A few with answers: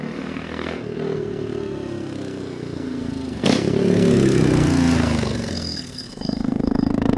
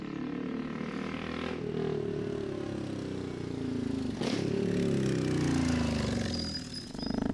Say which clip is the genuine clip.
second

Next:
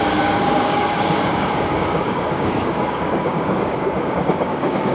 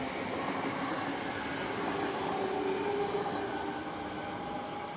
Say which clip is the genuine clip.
second